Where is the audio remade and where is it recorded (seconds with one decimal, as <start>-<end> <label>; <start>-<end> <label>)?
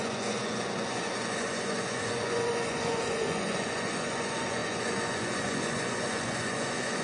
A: 0.0-7.0 remade